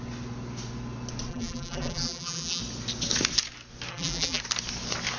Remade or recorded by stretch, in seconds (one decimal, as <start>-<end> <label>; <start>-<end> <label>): 0.0-1.3 recorded; 1.3-2.6 remade; 2.6-3.9 recorded; 3.9-4.4 remade; 4.4-5.2 recorded